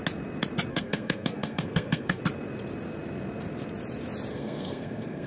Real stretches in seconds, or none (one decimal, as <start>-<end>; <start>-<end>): 0.0-0.7; 2.2-4.3